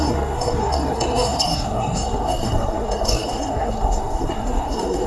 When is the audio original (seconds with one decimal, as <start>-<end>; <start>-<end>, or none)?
none